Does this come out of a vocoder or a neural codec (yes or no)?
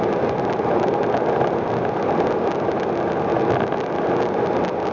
no